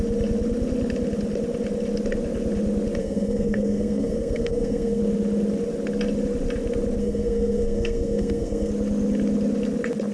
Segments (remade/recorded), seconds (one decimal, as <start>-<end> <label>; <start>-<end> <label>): 0.0-3.0 recorded; 3.0-5.0 remade; 5.0-7.0 recorded; 7.0-8.7 remade; 8.7-10.1 recorded